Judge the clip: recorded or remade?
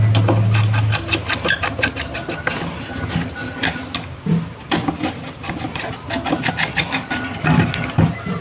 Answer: recorded